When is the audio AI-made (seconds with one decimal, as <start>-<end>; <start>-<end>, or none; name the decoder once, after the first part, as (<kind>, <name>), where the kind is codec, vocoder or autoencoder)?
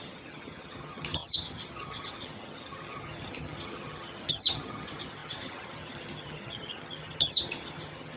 0.0-8.2 (vocoder, HiFi-GAN)